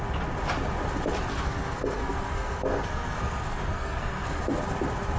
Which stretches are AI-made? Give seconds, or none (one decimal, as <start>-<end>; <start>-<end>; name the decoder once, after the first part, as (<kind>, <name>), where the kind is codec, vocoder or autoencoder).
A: 1.3-4.4 (codec, SNAC)